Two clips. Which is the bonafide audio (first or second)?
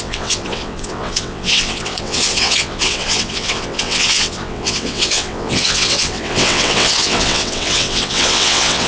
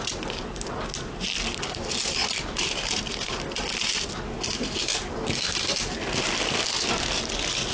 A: second